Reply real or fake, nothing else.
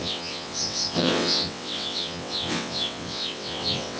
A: fake